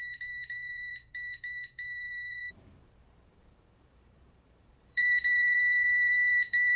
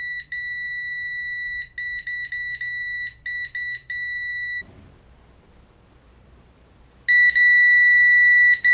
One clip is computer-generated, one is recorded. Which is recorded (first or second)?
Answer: second